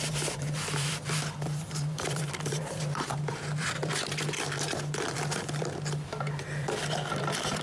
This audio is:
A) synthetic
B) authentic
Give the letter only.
A